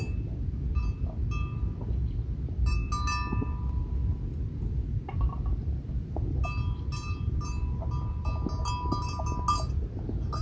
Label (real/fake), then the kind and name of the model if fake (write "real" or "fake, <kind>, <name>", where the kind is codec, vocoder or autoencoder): real